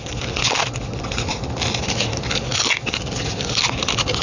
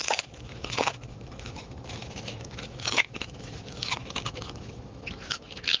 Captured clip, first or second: first